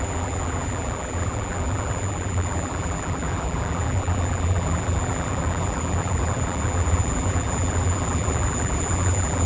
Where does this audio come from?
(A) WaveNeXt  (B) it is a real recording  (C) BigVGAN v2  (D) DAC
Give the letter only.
C